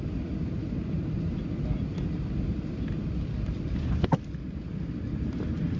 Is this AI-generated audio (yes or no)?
no